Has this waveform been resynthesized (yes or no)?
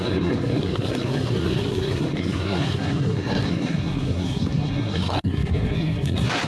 yes